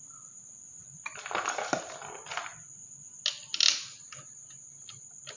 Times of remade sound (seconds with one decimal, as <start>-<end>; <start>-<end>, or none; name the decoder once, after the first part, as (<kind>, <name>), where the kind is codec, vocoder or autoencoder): none